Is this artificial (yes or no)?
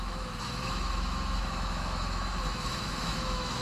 yes